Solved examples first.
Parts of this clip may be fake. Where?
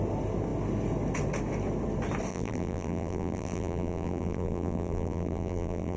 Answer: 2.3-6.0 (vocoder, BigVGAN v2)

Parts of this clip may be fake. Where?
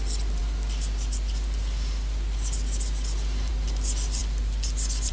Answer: none